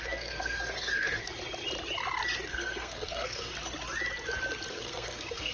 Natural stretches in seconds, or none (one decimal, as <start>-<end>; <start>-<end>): 1.2-2.5; 3.5-4.7